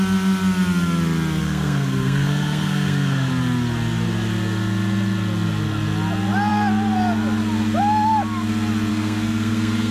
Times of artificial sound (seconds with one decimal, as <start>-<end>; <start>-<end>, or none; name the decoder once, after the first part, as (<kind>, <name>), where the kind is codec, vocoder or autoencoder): 1.4-3.3 (codec, SNAC); 8.9-9.9